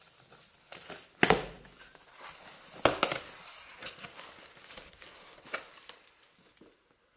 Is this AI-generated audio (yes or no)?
no